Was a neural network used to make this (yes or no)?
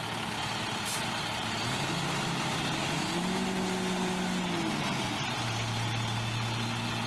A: no